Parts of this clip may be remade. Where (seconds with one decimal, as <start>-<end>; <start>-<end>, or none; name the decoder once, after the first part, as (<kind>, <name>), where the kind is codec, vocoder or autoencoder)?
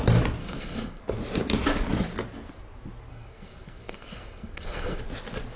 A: 0.4-1.0 (codec, SNAC); 3.1-5.0